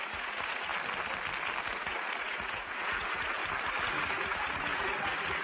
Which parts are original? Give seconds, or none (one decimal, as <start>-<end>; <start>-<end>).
0.7-1.7; 3.4-3.9